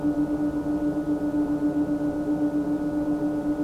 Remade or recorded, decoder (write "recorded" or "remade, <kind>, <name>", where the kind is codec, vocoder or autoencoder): recorded